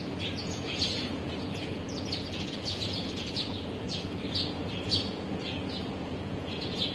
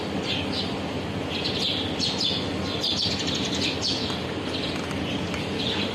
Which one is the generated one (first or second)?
first